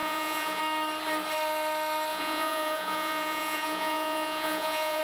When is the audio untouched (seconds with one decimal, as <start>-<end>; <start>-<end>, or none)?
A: 0.6-2.1